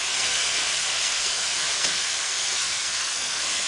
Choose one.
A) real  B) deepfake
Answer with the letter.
B